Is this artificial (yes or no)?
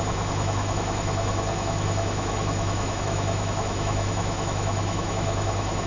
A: yes